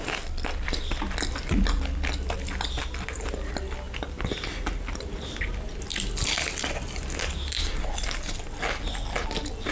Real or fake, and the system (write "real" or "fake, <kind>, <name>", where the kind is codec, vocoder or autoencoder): real